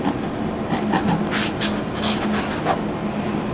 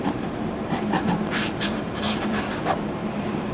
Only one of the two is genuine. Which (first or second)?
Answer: first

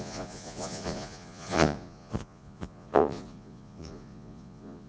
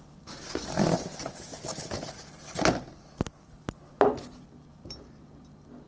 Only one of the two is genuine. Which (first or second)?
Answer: second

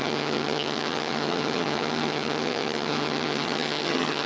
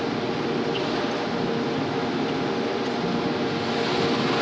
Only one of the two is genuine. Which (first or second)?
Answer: second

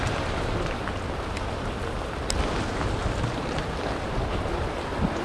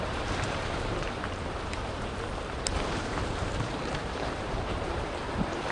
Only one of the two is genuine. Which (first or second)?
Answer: first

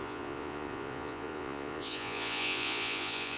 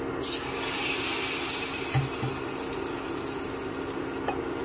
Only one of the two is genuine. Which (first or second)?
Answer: second